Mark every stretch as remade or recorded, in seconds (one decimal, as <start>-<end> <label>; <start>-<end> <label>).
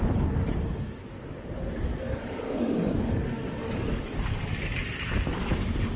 0.0-1.9 recorded; 1.9-4.6 remade; 4.6-6.0 recorded